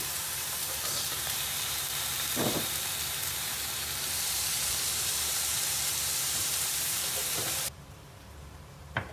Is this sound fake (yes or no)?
yes